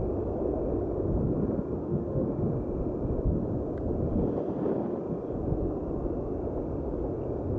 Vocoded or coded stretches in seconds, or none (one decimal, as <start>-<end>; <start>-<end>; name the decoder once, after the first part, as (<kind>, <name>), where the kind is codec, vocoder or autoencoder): 1.8-2.4 (autoencoder, DAC-VAE)